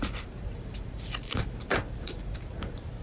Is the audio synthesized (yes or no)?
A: yes